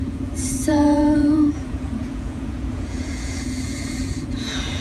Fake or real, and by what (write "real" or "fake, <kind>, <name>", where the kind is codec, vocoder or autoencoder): fake, vocoder, Vocos